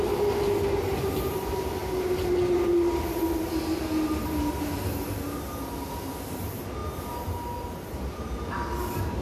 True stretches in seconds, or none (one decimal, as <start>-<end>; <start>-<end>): 0.0-9.2